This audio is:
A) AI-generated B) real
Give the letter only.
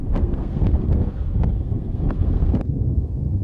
A